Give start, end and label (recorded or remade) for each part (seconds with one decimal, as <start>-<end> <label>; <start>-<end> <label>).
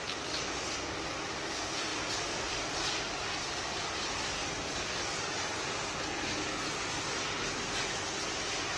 0.0-1.9 recorded; 1.9-4.3 remade; 4.3-8.8 recorded